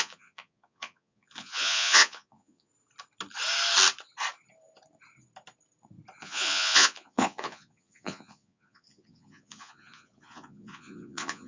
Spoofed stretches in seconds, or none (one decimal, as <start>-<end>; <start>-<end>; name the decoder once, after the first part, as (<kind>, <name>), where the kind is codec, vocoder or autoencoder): 0.0-2.7 (vocoder, Vocos); 6.2-11.5